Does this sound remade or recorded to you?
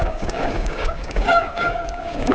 remade